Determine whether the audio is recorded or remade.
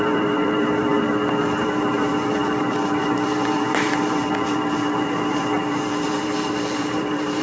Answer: remade